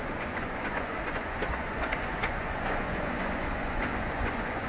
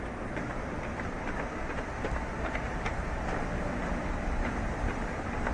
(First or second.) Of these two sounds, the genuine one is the second